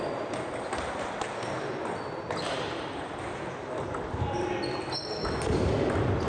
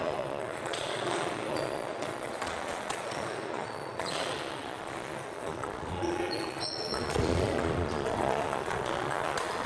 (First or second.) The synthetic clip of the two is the second